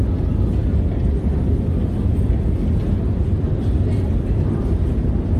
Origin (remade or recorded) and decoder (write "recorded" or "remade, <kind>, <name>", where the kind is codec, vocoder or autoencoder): recorded